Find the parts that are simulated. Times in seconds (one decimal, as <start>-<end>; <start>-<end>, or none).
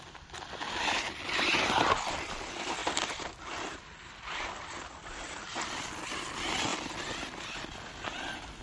none